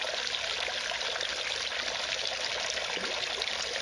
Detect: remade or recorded recorded